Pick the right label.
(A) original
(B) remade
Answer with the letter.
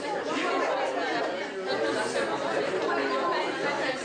A